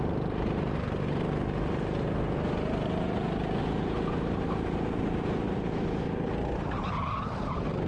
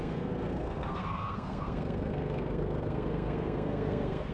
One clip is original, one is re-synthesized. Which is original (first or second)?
first